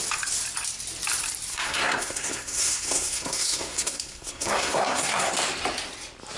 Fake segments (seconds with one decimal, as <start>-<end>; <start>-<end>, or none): 1.5-5.3